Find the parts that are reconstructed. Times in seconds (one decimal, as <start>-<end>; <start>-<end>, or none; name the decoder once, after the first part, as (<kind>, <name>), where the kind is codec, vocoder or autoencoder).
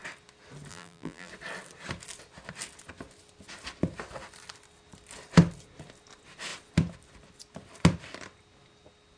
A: 0.7-1.3 (vocoder, BigVGAN v2)